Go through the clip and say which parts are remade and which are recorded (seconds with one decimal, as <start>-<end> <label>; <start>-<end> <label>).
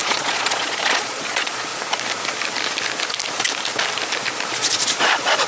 0.0-1.7 remade; 1.7-5.0 recorded; 5.0-5.5 remade